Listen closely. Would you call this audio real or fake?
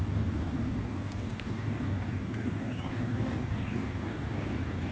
fake